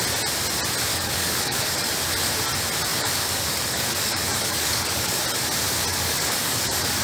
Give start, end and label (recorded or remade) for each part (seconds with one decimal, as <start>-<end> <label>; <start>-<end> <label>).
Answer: 0.0-0.9 recorded; 0.9-1.9 remade; 1.9-2.9 recorded; 2.9-5.2 remade; 5.2-5.9 recorded; 5.9-7.0 remade